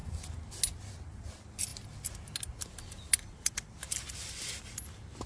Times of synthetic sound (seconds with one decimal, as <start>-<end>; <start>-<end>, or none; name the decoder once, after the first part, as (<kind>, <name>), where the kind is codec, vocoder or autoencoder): none